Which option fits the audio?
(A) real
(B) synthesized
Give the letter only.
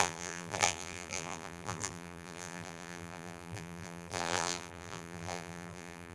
B